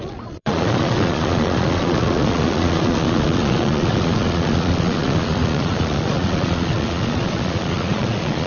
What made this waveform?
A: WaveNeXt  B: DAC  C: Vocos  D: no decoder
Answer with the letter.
C